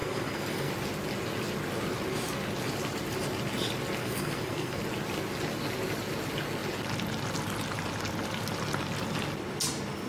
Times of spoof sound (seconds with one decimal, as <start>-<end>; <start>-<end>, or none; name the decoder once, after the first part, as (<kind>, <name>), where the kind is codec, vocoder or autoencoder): 0.0-0.7 (codec, SNAC); 4.0-4.8